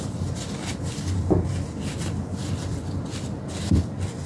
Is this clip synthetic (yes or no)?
no